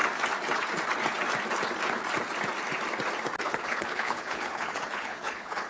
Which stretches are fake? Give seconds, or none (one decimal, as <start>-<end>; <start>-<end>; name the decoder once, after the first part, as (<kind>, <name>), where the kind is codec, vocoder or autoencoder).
3.4-5.7 (codec, HILCodec)